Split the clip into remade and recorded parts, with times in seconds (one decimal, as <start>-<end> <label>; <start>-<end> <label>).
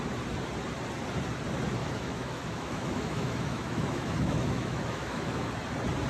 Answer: 0.0-1.8 recorded; 1.8-5.5 remade; 5.5-6.1 recorded